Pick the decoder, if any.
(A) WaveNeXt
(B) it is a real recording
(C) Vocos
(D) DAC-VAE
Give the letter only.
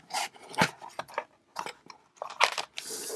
B